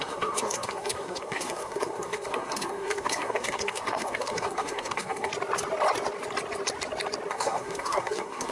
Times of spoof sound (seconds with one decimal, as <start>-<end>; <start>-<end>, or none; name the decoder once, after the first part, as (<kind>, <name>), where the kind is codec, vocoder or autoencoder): 0.0-5.3 (codec, SNAC); 7.3-8.5